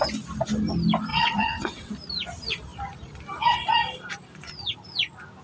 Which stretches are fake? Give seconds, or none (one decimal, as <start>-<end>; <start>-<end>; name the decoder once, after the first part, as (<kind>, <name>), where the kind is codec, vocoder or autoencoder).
1.1-1.9 (vocoder, WaveNeXt)